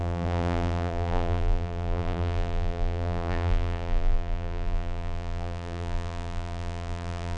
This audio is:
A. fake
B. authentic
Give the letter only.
A